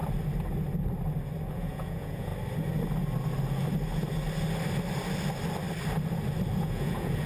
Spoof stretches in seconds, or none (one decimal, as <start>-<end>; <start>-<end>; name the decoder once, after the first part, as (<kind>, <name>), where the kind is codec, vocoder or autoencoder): 1.5-2.3 (vocoder, Vocos); 6.6-7.3